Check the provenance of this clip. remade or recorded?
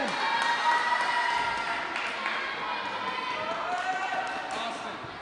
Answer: recorded